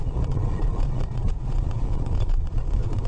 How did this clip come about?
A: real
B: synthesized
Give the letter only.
B